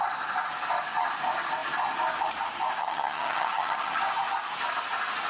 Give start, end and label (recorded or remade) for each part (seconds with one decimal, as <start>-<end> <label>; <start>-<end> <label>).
0.0-2.8 recorded; 2.8-4.0 remade; 4.0-5.3 recorded